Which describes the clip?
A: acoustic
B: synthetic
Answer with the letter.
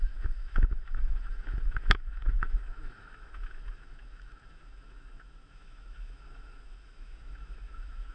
B